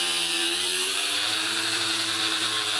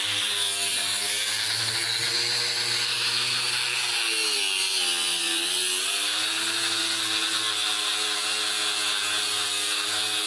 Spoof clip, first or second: first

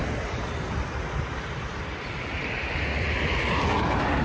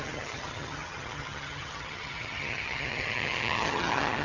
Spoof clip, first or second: second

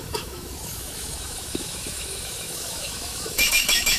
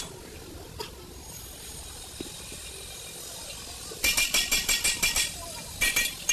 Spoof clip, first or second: first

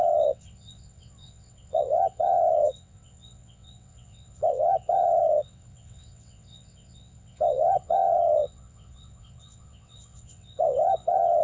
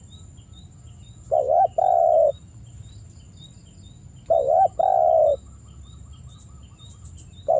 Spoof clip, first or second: first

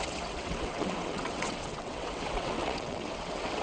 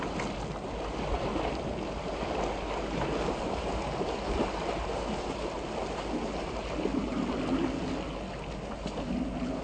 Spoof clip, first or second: first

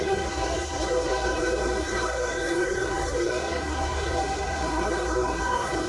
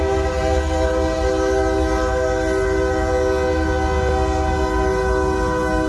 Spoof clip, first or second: first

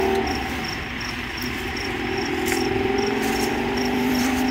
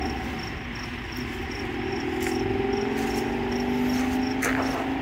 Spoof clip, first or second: first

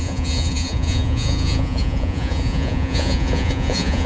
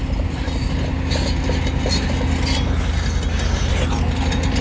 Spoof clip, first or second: first